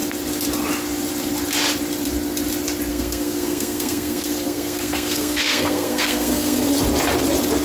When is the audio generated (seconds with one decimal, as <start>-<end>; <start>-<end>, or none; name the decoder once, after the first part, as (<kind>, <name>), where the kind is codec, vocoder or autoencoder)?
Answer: 2.9-6.7 (codec, SNAC)